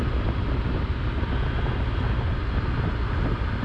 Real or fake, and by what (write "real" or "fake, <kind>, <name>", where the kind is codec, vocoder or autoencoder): real